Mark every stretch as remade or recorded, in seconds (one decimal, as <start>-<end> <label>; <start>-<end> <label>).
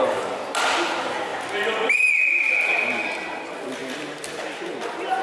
0.0-5.2 recorded